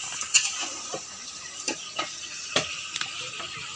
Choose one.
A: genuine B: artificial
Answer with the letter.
B